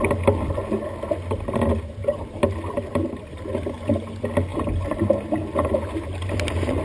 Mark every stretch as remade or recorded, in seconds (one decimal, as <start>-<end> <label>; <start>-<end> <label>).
0.0-2.0 recorded; 2.0-2.5 remade; 2.5-4.5 recorded; 4.5-6.8 remade